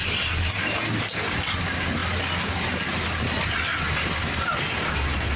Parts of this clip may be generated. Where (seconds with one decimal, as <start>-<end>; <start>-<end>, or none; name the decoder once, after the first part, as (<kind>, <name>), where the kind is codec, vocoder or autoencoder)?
none